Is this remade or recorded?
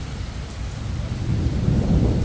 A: recorded